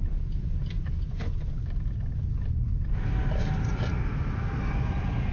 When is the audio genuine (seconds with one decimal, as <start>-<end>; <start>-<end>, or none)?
0.0-5.3